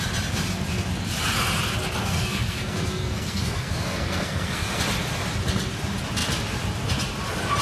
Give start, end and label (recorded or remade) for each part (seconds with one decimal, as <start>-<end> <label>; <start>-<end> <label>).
0.0-2.0 recorded; 2.0-4.8 remade; 4.8-7.6 recorded